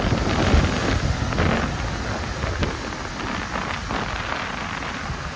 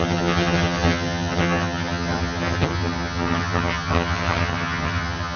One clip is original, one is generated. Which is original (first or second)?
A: first